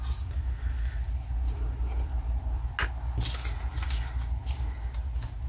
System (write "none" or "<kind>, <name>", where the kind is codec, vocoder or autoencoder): none